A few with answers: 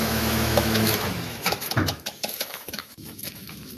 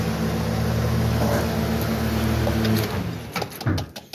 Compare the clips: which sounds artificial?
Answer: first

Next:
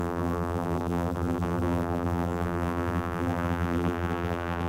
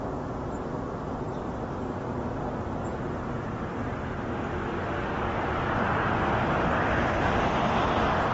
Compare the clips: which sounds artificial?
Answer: first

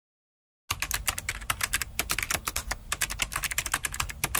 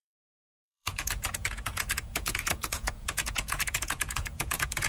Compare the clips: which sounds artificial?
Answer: second